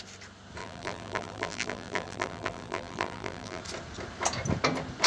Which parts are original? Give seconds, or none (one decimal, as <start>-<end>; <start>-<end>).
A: 0.0-0.6; 3.6-5.1